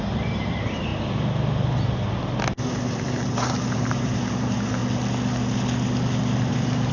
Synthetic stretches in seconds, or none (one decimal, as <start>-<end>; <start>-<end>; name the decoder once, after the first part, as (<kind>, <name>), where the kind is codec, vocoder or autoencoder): 0.0-0.9 (vocoder, BigVGAN v2); 2.7-4.8; 6.5-6.9